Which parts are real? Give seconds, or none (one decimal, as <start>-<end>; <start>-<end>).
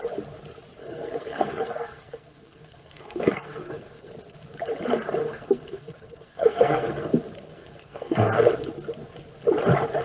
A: 0.0-0.8; 4.1-5.2; 7.1-7.5; 8.5-10.0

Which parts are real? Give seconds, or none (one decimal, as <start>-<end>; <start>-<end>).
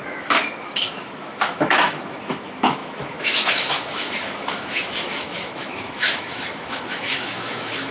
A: none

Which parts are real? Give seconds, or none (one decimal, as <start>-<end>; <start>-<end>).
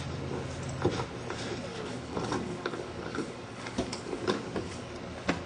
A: 0.0-1.7; 4.9-5.5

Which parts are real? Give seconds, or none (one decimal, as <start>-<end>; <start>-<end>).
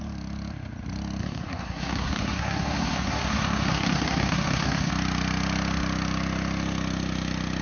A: 0.0-1.2; 4.9-7.6